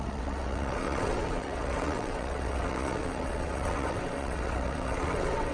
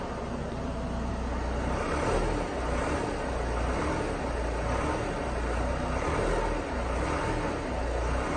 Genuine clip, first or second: second